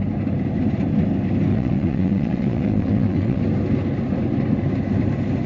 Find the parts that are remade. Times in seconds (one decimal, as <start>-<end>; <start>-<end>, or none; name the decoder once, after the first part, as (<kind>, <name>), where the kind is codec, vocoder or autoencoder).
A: 1.5-3.4 (vocoder, WaveNeXt)